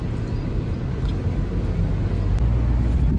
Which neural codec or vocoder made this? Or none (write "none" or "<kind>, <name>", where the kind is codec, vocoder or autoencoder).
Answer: none